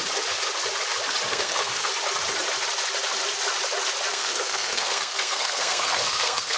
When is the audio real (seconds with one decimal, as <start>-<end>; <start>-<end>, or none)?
0.0-1.3; 1.9-4.1